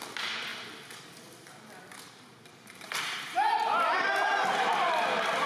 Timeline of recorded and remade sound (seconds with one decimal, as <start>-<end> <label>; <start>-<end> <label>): 0.0-0.5 remade; 0.5-2.3 recorded; 2.3-5.5 remade